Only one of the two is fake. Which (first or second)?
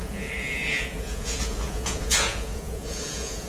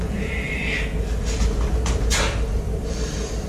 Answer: first